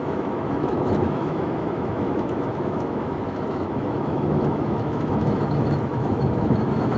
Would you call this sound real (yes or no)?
no